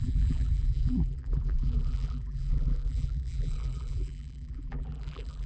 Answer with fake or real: fake